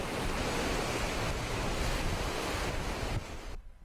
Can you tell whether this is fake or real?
fake